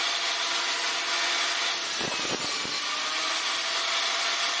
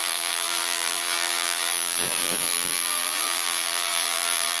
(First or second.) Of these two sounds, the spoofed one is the second